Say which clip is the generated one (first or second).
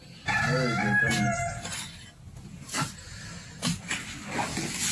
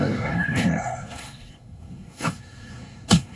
second